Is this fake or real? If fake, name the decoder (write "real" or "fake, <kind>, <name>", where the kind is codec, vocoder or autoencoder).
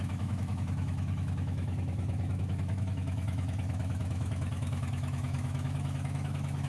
fake, autoencoder, DAC-VAE